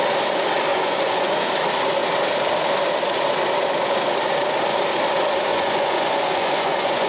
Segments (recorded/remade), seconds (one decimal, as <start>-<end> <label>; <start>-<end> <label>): 0.0-0.7 recorded; 0.7-1.5 remade; 1.5-5.5 recorded; 5.5-7.1 remade